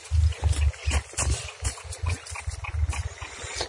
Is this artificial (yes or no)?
no